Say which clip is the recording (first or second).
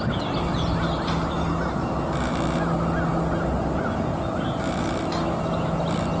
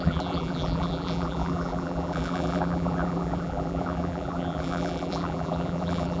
first